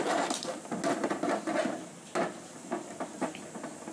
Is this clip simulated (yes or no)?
no